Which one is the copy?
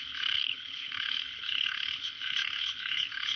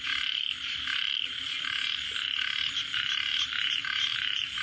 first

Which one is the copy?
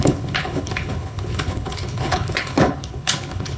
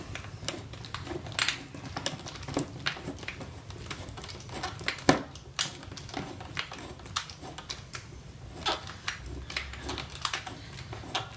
first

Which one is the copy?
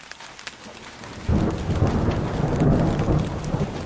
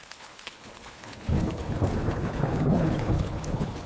second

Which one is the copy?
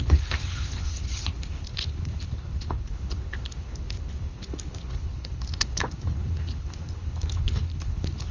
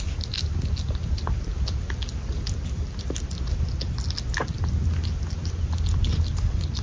first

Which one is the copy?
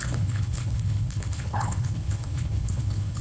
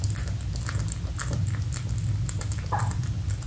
first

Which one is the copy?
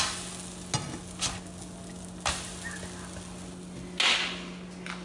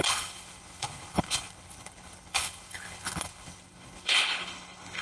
second